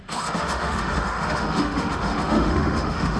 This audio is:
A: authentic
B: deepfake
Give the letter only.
B